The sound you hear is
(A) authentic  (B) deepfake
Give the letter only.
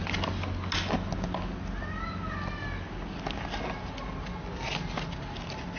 A